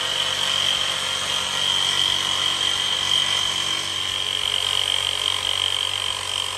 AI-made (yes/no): no